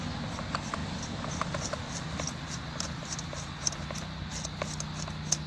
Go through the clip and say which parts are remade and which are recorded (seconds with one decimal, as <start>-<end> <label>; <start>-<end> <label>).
0.0-5.5 recorded